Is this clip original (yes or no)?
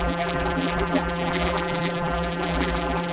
no